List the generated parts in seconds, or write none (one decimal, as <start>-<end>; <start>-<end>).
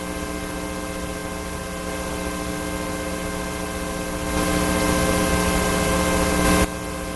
none